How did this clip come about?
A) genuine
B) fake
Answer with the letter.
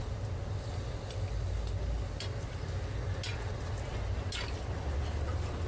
A